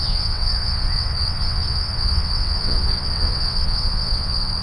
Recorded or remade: remade